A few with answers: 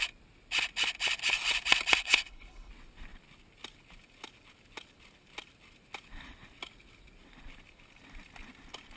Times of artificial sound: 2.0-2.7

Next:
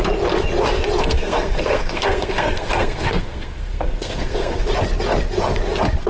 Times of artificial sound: 1.0-4.7

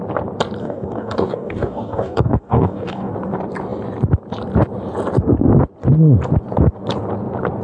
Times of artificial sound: 0.6-3.1

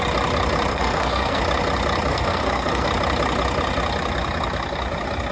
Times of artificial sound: 0.7-1.4; 2.1-2.9

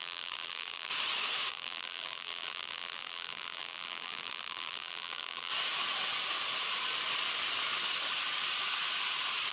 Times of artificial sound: 0.0-0.9; 1.5-5.5

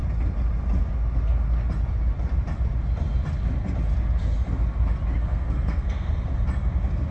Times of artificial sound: 5.2-6.1